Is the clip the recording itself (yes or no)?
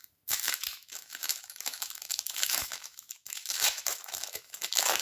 no